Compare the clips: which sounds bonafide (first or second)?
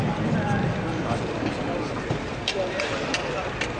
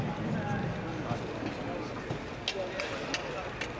second